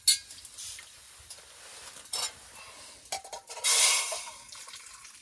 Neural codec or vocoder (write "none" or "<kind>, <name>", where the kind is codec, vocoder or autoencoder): none